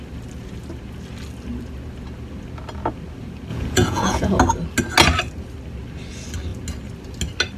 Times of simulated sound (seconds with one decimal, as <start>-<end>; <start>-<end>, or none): 3.5-4.4